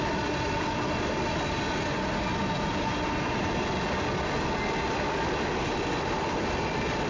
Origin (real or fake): real